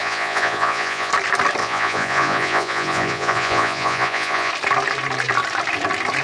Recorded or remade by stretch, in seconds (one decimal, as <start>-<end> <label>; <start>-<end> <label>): 0.0-1.1 remade; 1.1-1.6 recorded; 1.6-4.5 remade; 4.5-6.2 recorded